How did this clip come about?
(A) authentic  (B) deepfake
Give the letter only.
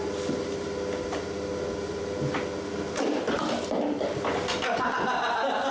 A